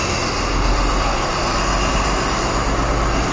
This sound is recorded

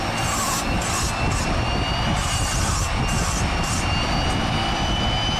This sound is recorded